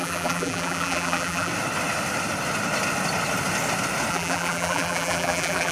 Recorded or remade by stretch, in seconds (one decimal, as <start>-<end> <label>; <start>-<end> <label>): 0.0-1.5 remade; 1.5-4.1 recorded; 4.1-5.7 remade